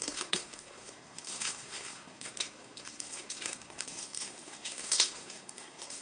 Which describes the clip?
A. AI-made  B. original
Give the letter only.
A